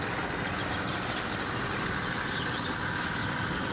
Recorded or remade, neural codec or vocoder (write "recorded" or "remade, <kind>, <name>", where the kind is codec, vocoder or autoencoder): recorded